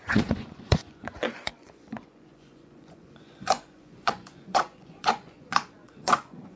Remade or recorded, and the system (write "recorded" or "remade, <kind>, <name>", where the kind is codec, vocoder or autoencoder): remade, vocoder, Vocos